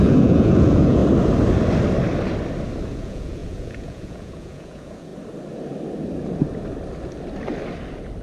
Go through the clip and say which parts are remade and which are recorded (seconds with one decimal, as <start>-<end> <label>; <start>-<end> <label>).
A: 0.0-1.0 remade; 1.0-2.9 recorded; 2.9-5.1 remade; 5.1-8.2 recorded

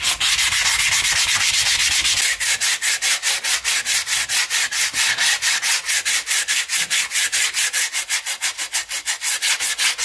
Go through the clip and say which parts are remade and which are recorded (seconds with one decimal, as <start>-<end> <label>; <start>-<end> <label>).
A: 0.0-4.4 recorded; 4.4-5.6 remade; 5.6-10.0 recorded

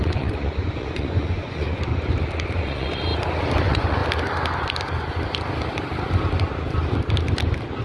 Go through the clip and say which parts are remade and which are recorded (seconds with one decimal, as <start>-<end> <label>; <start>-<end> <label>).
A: 0.0-1.9 remade; 1.9-2.6 recorded; 2.6-3.1 remade; 3.1-3.6 recorded; 3.6-4.0 remade; 4.0-7.8 recorded